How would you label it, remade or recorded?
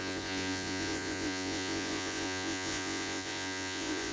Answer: remade